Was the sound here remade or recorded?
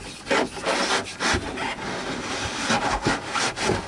recorded